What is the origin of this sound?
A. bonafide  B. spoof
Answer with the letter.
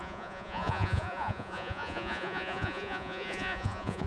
B